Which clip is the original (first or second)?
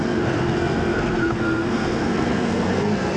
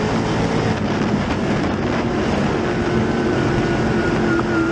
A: second